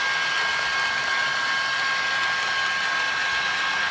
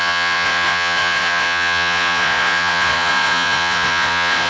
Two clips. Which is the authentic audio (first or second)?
first